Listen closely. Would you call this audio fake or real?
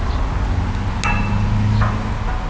real